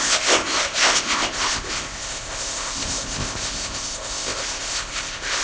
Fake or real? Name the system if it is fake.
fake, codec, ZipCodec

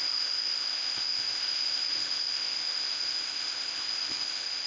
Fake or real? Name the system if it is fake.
fake, codec, ZipCodec